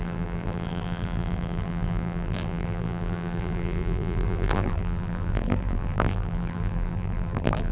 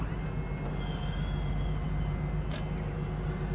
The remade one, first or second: first